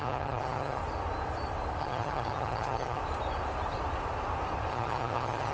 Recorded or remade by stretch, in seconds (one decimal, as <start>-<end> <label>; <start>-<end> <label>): 0.0-0.8 remade; 0.8-1.8 recorded; 1.8-3.0 remade; 3.0-4.7 recorded; 4.7-5.5 remade